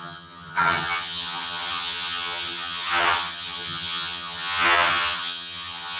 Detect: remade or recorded remade